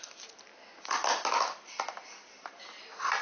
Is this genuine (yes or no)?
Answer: yes